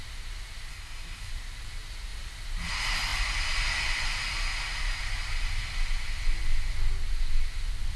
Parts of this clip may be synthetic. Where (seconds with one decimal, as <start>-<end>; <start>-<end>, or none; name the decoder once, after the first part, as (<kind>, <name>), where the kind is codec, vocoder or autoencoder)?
0.7-1.3 (codec, DAC)